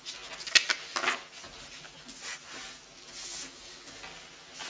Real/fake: real